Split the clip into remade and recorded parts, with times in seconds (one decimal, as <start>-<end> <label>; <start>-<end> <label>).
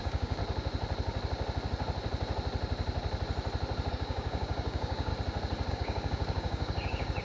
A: 0.0-0.4 remade; 0.4-3.9 recorded; 3.9-5.1 remade; 5.1-5.7 recorded; 5.7-7.2 remade